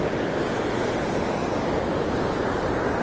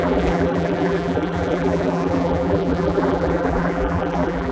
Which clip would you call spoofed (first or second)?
second